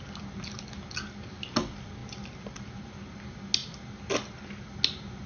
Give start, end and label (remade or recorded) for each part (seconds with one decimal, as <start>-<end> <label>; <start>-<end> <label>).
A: 0.0-5.3 recorded